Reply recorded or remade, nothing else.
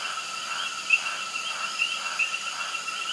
recorded